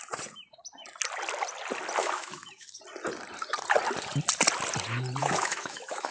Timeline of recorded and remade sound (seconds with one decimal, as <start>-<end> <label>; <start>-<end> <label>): 0.0-2.0 recorded; 2.0-2.8 remade; 2.8-5.2 recorded; 5.2-6.1 remade